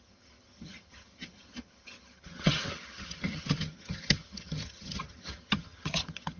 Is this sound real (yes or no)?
no